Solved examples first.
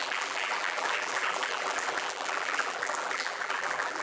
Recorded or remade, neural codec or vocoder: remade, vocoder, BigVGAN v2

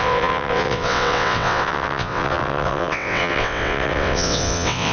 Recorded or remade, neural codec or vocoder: remade, vocoder, WaveNeXt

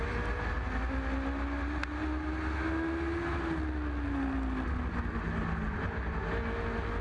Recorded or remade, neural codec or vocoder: recorded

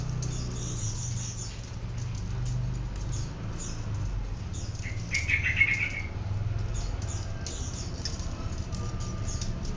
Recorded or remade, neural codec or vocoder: recorded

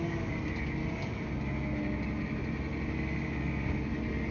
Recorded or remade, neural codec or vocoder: recorded